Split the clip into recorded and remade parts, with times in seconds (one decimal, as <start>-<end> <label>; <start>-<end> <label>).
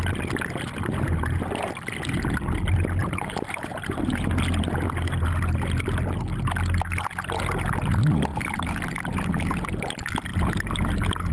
0.0-3.0 recorded; 3.0-4.0 remade; 4.0-8.3 recorded; 8.3-9.9 remade; 9.9-11.3 recorded